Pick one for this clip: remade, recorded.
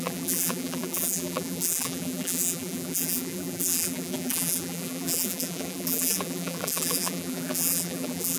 remade